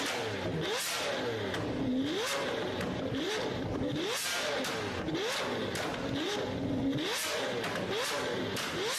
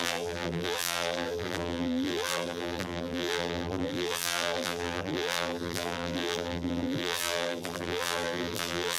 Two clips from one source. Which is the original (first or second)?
first